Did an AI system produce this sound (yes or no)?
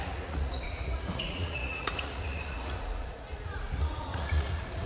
yes